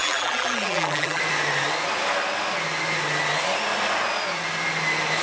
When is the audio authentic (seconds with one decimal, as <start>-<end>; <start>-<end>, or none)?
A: 1.2-5.2